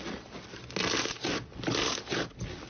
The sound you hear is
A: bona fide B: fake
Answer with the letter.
A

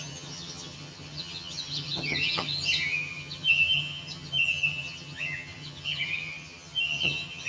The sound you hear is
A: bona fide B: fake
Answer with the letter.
B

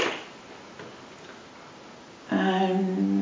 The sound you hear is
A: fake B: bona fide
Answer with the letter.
B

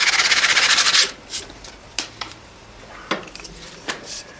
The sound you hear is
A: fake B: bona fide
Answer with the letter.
B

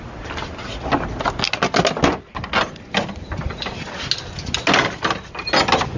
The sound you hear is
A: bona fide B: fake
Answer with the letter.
A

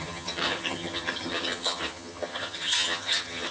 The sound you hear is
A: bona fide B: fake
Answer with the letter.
B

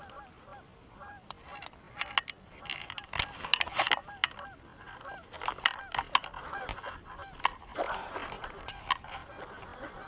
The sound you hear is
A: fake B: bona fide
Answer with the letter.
B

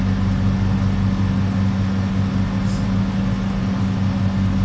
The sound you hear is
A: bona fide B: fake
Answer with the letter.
A